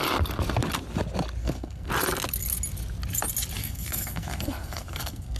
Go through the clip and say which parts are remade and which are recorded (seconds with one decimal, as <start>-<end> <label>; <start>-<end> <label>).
0.0-1.4 recorded; 1.4-1.9 remade; 1.9-3.6 recorded; 3.6-5.4 remade